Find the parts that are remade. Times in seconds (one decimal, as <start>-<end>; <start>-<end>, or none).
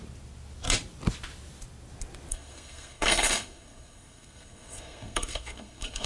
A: 2.3-6.1